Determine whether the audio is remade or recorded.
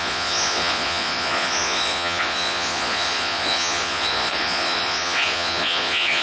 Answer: remade